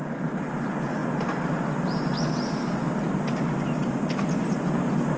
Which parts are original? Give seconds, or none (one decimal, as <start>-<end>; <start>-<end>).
0.0-5.2